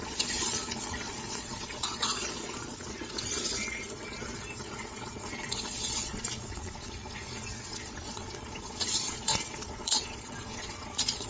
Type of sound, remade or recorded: remade